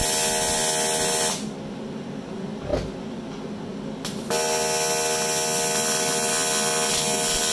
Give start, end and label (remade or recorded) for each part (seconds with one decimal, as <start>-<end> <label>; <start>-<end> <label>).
0.0-7.5 recorded